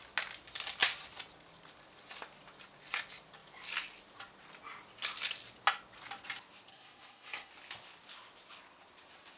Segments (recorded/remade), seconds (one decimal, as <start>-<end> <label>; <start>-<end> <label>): 0.0-6.7 recorded; 6.7-7.5 remade; 7.5-9.4 recorded